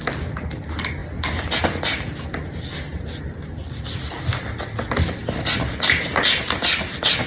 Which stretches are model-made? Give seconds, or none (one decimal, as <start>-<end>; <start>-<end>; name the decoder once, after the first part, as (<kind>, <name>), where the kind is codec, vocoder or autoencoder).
none

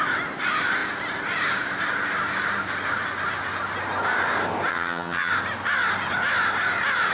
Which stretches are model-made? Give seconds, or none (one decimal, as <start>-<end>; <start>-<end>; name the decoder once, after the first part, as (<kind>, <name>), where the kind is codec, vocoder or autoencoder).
4.7-5.3 (vocoder, HiFi-GAN)

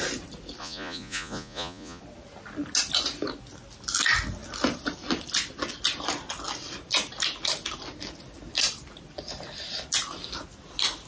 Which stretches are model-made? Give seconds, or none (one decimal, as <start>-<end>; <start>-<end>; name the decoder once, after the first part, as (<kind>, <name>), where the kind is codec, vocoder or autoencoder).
0.6-2.0 (vocoder, Vocos)

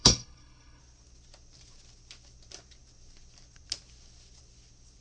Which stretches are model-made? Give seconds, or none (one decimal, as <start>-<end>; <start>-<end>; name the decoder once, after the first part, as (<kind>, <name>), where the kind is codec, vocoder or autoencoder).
0.0-0.8 (codec, HILCodec)